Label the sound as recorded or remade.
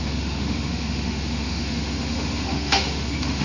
remade